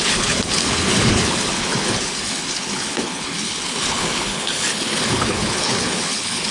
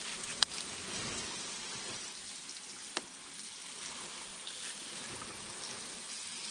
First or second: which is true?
second